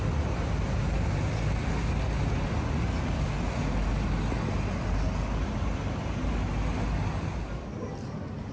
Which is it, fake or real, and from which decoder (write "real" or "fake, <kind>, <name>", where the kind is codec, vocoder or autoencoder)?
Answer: real